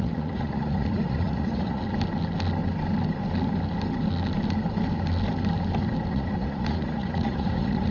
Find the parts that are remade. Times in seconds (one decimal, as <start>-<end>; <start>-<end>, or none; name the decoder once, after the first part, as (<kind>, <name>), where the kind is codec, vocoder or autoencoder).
0.0-1.8 (vocoder, Vocos); 6.1-7.9